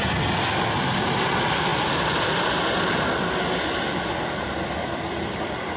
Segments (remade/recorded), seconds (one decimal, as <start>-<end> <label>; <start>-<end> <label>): 0.0-5.8 recorded